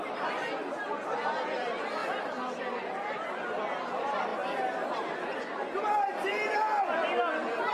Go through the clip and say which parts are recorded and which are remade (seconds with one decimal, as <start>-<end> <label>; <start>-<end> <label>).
0.0-7.7 recorded